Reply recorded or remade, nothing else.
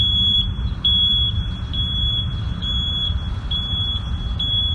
remade